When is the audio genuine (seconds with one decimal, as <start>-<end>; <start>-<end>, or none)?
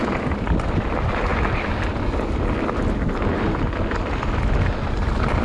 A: 0.0-5.4